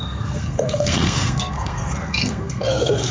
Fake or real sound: fake